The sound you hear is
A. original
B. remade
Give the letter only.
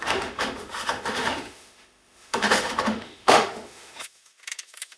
B